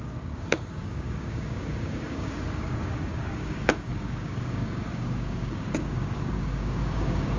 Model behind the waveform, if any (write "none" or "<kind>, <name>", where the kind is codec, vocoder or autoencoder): codec, DAC